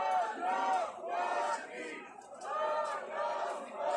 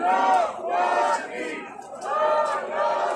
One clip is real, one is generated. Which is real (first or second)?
second